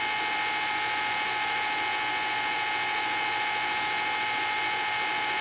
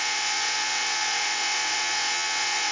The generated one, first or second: second